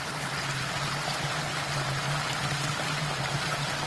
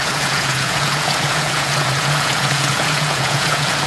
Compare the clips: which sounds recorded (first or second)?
first